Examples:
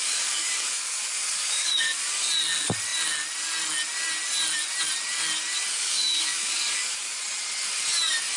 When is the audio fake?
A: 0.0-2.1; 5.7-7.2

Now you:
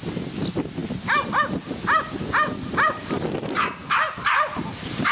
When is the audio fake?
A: none

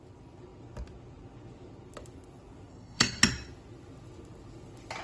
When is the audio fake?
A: 2.7-3.2

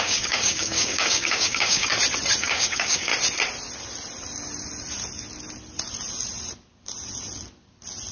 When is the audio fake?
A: 0.0-1.9; 2.4-3.1

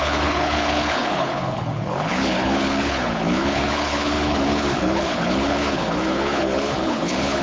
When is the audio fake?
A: 0.0-7.4

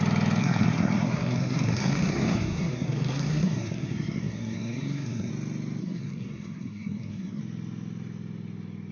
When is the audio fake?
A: 0.4-5.3; 5.8-7.4

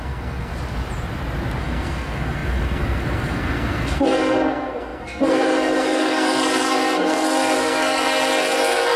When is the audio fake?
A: 0.0-0.5; 1.6-9.0